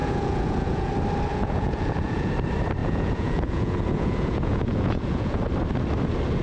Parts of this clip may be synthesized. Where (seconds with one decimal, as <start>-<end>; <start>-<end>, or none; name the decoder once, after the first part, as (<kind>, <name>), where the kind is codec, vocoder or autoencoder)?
0.0-0.9 (vocoder, Vocos); 1.3-2.3; 2.8-5.4